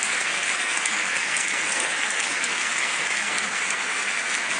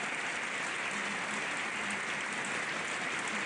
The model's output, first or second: first